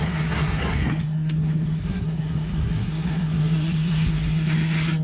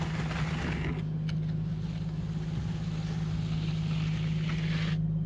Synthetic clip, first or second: first